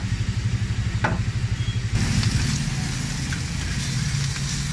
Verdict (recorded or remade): recorded